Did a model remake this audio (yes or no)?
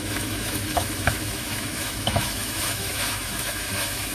yes